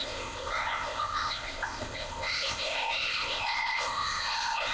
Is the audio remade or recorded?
remade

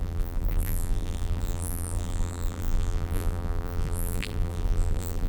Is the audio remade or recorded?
remade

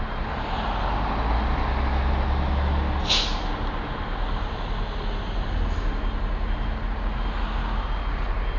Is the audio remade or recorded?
recorded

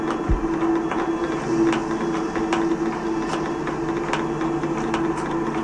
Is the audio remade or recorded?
recorded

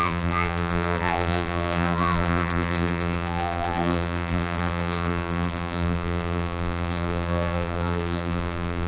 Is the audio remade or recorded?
remade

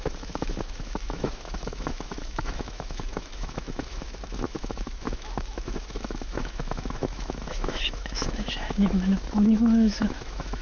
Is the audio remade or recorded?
remade